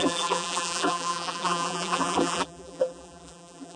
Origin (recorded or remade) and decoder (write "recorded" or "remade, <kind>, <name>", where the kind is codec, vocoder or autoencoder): remade, vocoder, BigVGAN v2